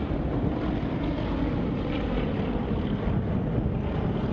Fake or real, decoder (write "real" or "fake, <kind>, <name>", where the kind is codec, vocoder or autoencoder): real